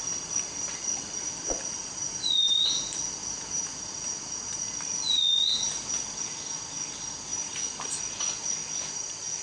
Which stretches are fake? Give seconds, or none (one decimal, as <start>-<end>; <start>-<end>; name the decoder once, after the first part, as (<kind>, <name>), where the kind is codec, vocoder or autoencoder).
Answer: none